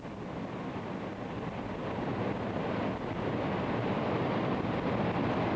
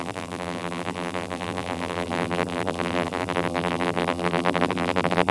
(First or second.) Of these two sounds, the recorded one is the first